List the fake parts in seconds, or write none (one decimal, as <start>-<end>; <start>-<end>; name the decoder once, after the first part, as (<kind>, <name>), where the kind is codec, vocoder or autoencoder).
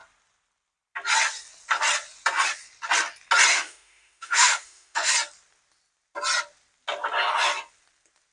3.5-5.1 (autoencoder, DAC-VAE)